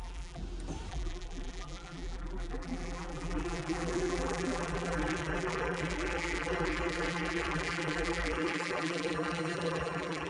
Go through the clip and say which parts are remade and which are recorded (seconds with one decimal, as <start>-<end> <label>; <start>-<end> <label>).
0.0-0.4 remade; 0.4-0.9 recorded; 0.9-10.3 remade